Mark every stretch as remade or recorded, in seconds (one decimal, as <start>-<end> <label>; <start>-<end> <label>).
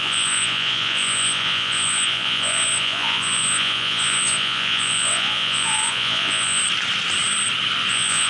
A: 0.0-6.6 remade; 6.6-7.9 recorded; 7.9-8.3 remade